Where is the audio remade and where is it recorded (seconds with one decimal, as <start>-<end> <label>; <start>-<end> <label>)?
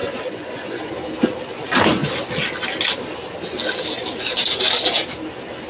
0.0-0.9 remade; 0.9-5.7 recorded